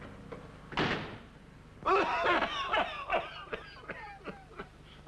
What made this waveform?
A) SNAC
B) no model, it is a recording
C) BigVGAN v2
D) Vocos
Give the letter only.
B